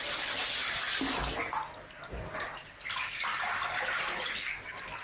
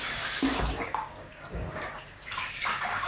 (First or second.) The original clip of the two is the first